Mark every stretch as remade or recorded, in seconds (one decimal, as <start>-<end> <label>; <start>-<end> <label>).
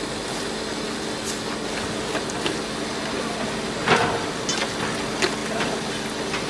0.0-3.8 recorded; 3.8-4.4 remade; 4.4-6.5 recorded